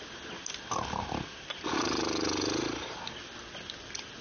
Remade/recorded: recorded